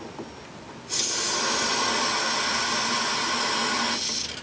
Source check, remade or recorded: recorded